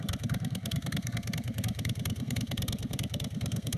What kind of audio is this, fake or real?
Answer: fake